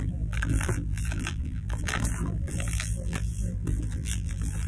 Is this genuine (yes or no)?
no